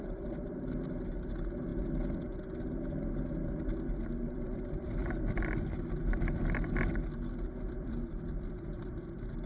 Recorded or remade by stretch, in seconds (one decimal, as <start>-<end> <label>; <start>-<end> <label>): 0.0-1.7 remade; 1.7-3.3 recorded; 3.3-5.0 remade; 5.0-7.7 recorded; 7.7-9.5 remade